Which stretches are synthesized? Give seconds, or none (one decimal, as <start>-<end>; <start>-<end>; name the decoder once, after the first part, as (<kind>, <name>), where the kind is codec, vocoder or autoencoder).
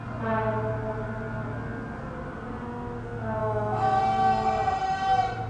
3.4-4.0 (autoencoder, DAC-VAE)